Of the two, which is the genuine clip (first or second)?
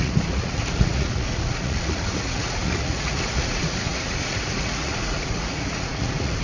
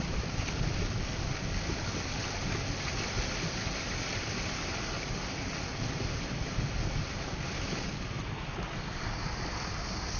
second